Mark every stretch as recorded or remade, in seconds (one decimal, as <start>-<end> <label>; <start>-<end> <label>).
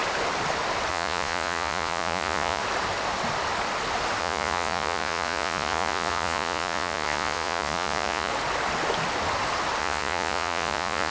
0.0-0.9 recorded; 0.9-2.6 remade; 2.6-4.2 recorded; 4.2-8.3 remade; 8.3-9.8 recorded; 9.8-11.1 remade